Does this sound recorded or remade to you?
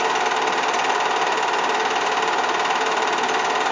recorded